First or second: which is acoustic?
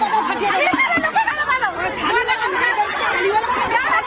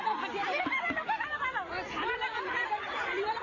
first